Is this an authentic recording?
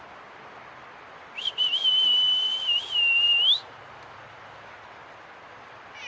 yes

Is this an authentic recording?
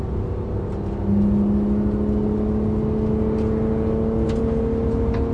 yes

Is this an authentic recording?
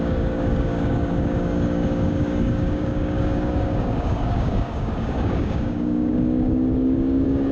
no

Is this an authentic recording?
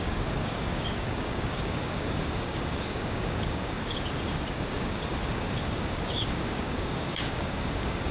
no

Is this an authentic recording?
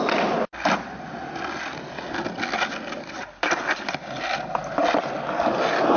yes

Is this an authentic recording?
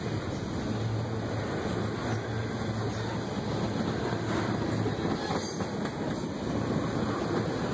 yes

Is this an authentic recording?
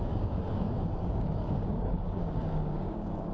no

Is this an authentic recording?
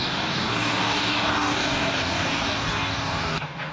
no